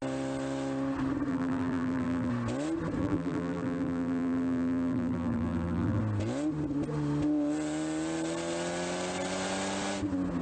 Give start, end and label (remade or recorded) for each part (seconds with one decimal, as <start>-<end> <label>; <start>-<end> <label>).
0.0-1.3 recorded; 1.3-2.3 remade; 2.3-3.0 recorded; 3.0-6.0 remade; 6.0-10.4 recorded